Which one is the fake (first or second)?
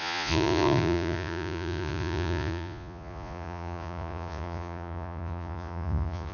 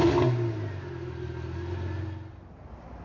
first